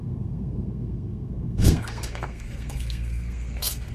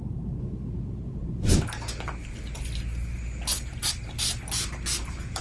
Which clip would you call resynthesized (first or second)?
first